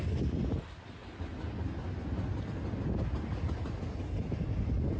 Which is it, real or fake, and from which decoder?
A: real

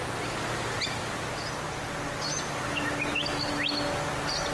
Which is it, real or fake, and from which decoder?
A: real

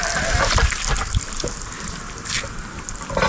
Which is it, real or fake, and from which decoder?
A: real